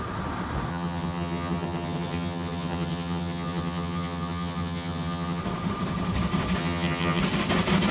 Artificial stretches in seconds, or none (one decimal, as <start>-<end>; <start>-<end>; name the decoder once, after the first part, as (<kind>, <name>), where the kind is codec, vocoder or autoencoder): 0.7-5.4 (vocoder, HiFi-GAN); 6.6-7.2